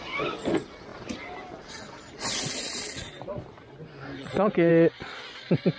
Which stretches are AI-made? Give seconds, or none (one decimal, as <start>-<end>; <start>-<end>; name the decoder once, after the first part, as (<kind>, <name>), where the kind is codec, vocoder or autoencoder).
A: 4.2-4.7 (vocoder, Vocos)